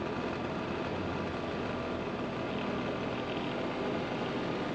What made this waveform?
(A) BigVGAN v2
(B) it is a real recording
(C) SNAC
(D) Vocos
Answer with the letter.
B